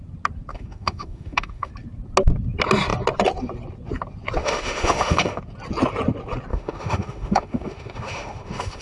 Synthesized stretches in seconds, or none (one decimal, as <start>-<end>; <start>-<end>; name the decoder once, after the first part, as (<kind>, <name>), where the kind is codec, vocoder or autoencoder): 0.5-1.7 (autoencoder, DAC-VAE); 4.4-5.4; 6.5-8.8